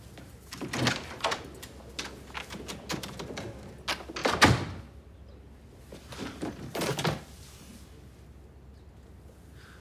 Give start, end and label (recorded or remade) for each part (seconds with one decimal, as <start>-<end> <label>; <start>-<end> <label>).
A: 0.0-4.2 recorded; 4.2-7.2 remade; 7.2-9.8 recorded